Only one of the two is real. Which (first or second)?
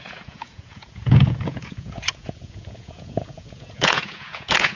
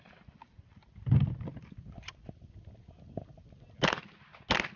second